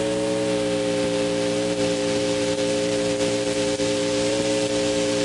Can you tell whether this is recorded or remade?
recorded